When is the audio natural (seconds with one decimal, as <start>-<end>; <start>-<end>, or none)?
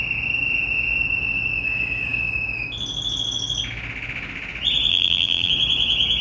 0.0-4.9; 5.5-6.2